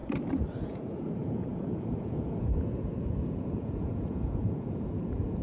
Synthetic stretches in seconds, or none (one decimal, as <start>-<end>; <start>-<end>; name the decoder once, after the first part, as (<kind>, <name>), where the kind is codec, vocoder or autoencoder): 0.6-5.4 (vocoder, Vocos)